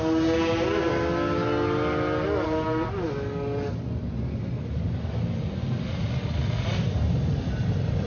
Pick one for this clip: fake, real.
real